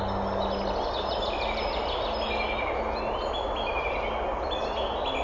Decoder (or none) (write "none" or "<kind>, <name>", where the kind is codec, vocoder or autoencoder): none